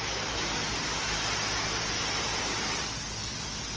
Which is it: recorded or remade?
recorded